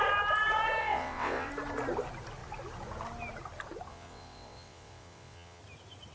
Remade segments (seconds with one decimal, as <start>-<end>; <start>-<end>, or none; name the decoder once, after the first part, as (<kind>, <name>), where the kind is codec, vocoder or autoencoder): 0.8-1.5 (vocoder, WaveNeXt); 3.9-5.6